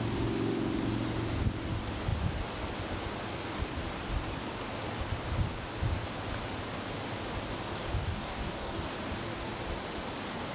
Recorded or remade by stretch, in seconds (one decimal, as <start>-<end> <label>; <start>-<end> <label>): 0.0-7.9 recorded; 7.9-8.8 remade; 8.8-10.5 recorded